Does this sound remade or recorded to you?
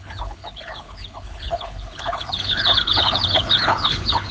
remade